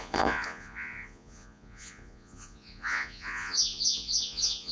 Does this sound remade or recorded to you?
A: remade